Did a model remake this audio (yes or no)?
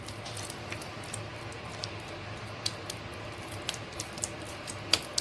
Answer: no